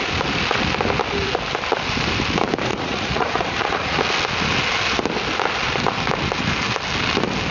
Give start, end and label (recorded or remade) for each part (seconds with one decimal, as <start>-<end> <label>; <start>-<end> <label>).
0.0-2.7 recorded; 2.7-4.0 remade; 4.0-7.5 recorded